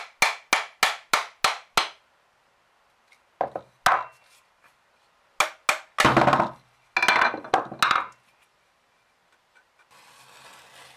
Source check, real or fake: real